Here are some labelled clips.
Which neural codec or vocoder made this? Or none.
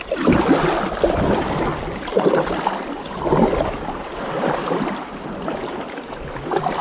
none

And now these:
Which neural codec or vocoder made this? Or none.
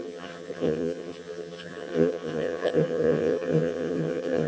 vocoder, HiFi-GAN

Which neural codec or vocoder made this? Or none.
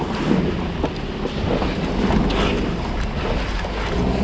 none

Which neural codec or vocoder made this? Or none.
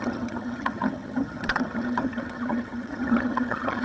vocoder, HiFi-GAN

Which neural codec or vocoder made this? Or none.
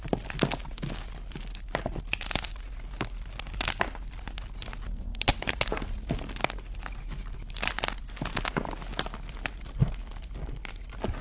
none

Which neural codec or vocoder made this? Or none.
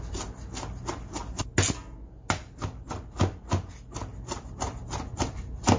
none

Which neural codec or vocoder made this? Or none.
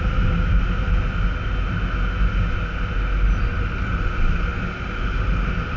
none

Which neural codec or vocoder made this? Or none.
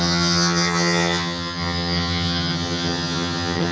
vocoder, HiFi-GAN